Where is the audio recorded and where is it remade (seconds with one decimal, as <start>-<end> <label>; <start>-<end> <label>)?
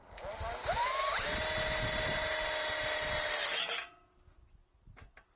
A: 0.0-5.4 recorded